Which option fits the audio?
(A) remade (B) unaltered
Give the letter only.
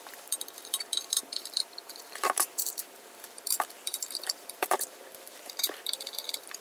A